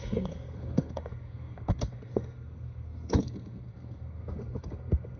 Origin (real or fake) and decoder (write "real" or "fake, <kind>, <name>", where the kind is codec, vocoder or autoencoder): fake, codec, SNAC